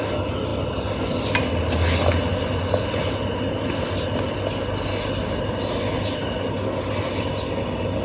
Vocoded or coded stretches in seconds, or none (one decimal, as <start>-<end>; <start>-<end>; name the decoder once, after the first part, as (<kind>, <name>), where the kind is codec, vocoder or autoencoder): none